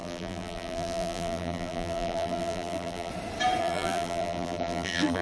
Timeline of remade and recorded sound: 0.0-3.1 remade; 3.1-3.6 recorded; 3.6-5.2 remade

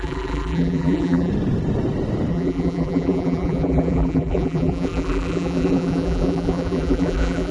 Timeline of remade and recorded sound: 0.0-1.3 remade; 1.3-2.3 recorded; 2.3-7.5 remade

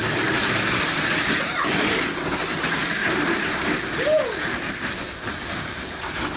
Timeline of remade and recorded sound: 0.0-2.8 recorded; 2.8-6.0 remade; 6.0-6.4 recorded

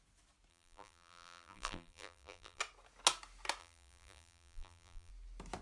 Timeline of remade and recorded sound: 0.0-0.5 recorded; 0.5-2.6 remade; 2.6-3.6 recorded; 3.6-5.1 remade; 5.1-5.6 recorded

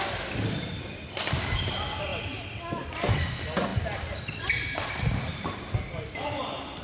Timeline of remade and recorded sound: 0.0-6.8 recorded

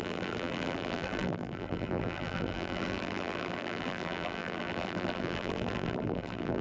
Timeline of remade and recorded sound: 0.0-6.6 remade

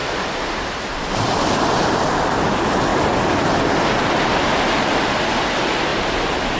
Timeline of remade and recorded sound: 0.0-5.9 recorded; 5.9-6.6 remade